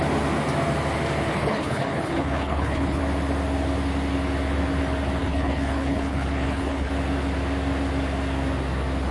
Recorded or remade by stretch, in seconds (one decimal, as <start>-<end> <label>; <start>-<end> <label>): 0.0-1.3 recorded; 1.3-3.0 remade; 3.0-5.2 recorded; 5.2-6.9 remade; 6.9-9.1 recorded